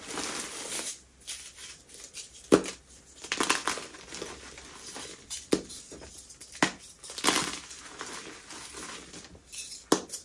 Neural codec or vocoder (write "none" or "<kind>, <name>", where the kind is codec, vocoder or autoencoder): none